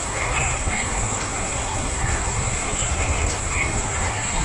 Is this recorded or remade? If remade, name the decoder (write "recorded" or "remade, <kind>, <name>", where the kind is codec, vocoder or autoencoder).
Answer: remade, codec, SNAC